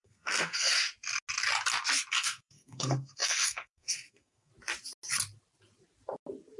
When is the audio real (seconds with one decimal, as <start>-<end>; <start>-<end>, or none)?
0.7-2.1; 4.5-6.6